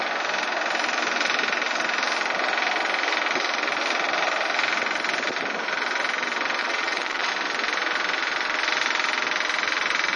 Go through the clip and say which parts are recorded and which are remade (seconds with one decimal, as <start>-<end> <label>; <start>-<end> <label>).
0.0-6.6 recorded; 6.6-7.3 remade; 7.3-10.2 recorded